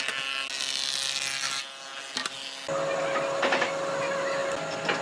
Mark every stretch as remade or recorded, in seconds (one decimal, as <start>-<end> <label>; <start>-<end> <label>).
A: 0.0-5.0 recorded